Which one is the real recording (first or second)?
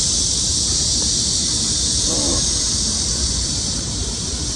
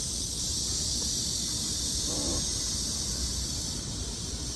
second